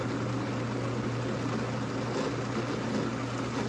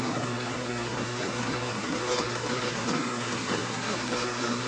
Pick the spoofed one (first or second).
second